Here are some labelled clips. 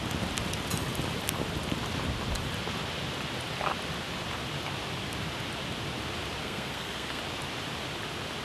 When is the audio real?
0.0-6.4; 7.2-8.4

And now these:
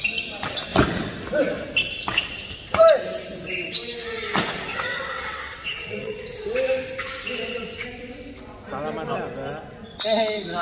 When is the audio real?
0.0-4.7; 6.1-10.6

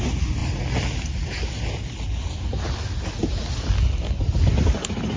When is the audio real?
0.0-5.2

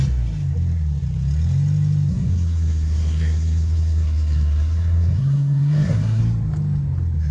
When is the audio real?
0.0-2.1; 6.2-7.3

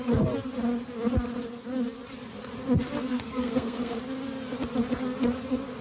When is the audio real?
0.0-3.1; 4.0-5.8

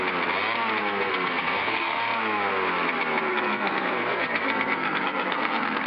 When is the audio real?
0.0-0.8; 2.0-3.3

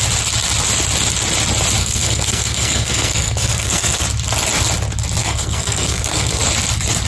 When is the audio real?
0.0-1.8; 4.0-5.2; 6.4-7.1

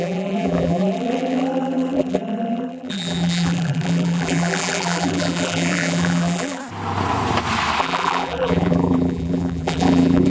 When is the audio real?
6.6-7.8